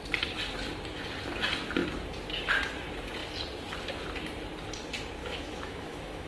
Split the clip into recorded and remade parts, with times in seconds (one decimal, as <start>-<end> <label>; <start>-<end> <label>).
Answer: 0.0-5.2 recorded; 5.2-6.3 remade